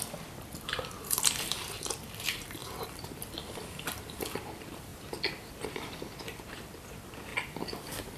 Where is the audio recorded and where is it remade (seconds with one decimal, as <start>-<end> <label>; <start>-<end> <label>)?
0.0-8.2 remade